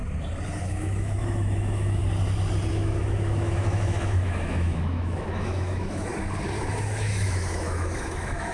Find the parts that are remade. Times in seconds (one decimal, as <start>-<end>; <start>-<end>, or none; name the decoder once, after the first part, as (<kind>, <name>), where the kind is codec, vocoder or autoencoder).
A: 0.6-2.0 (autoencoder, DAC-VAE); 2.7-6.1; 6.7-8.5